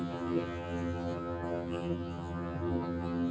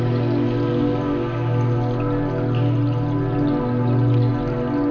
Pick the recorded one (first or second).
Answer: second